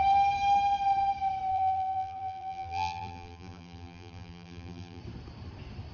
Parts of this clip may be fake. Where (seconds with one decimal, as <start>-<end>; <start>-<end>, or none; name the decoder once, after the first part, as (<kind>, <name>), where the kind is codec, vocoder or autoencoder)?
1.5-5.0 (vocoder, BigVGAN v2)